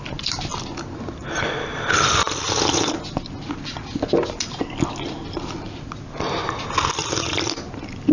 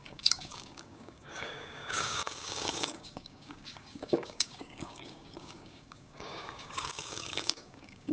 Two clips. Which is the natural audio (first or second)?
first